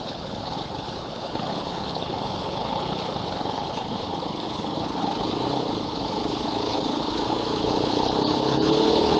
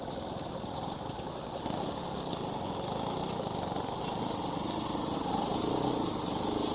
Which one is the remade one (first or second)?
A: first